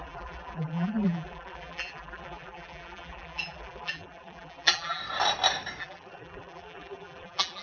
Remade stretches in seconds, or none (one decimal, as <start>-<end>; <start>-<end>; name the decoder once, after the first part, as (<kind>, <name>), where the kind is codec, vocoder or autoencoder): 0.0-5.0 (vocoder, BigVGAN v2); 5.8-7.6